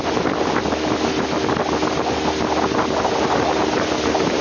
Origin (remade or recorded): recorded